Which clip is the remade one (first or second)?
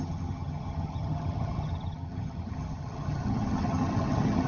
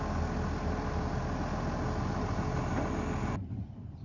first